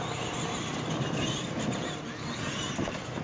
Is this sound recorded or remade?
recorded